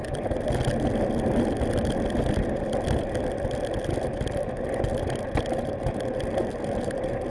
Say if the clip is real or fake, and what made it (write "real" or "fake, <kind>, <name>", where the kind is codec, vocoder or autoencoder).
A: real